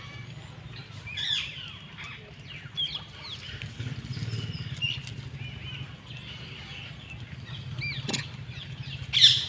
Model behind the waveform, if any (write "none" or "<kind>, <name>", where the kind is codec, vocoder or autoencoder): none